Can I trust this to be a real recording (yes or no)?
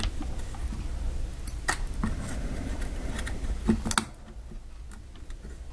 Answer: yes